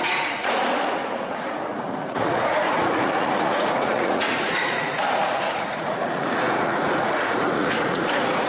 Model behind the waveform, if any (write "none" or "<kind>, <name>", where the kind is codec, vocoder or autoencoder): vocoder, Vocos